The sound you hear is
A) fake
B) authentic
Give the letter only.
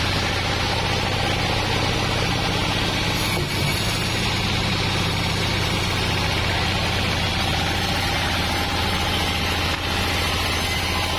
B